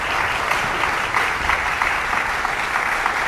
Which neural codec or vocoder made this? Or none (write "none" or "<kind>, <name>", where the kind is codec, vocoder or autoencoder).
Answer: none